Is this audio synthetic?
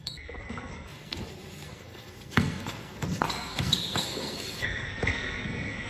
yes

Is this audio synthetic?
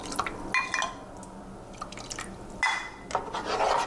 no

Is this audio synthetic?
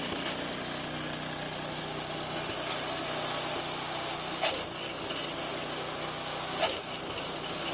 no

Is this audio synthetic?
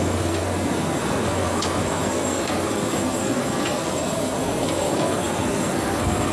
yes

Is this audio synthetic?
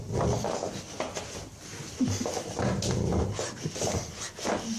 no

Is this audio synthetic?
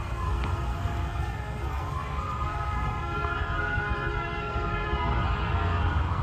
yes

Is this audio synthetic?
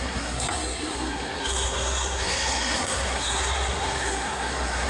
yes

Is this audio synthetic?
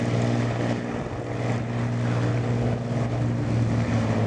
no